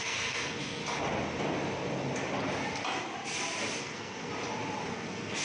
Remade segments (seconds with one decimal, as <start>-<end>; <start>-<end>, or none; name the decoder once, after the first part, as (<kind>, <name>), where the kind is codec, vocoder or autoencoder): 0.0-0.8 (codec, SNAC); 3.8-4.3; 4.9-5.4